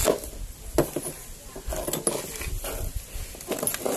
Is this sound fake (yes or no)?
no